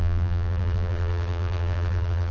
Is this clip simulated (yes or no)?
yes